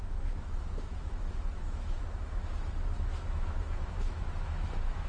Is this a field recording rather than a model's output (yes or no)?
no